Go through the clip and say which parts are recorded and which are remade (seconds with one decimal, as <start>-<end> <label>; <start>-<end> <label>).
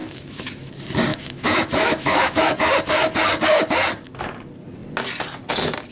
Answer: 0.0-0.7 remade; 0.7-1.1 recorded; 1.1-2.5 remade; 2.5-5.9 recorded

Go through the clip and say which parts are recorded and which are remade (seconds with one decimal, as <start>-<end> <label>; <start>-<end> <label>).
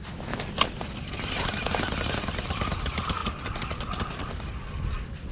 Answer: 0.0-5.3 recorded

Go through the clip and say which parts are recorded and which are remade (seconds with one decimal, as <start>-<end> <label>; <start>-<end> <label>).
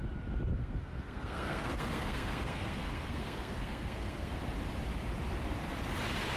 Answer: 0.0-0.6 recorded; 0.6-4.4 remade; 4.4-6.4 recorded